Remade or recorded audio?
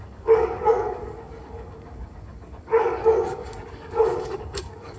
remade